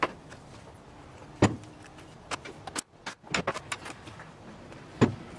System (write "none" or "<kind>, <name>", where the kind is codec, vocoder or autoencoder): none